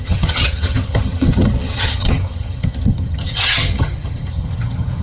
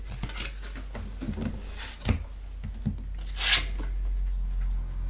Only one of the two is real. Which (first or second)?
second